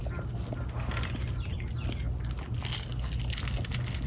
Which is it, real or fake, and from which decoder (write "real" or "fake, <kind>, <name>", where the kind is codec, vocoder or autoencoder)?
real